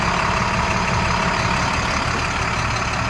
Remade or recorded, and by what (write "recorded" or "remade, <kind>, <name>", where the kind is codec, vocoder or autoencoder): recorded